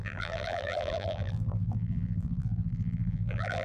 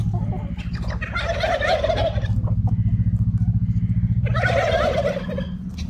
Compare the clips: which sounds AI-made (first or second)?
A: first